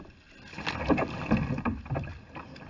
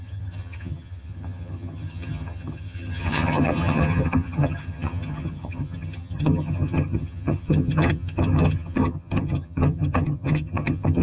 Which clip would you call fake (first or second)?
second